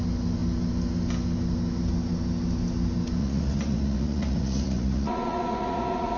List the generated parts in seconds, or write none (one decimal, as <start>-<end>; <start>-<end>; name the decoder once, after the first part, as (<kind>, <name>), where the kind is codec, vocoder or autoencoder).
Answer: 3.2-6.2 (vocoder, Vocos)